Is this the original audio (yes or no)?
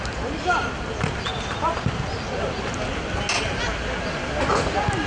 yes